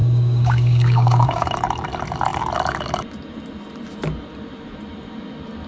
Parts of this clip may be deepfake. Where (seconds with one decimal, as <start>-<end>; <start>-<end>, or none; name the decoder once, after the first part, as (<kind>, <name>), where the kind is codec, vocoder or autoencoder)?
0.0-1.5 (codec, DAC)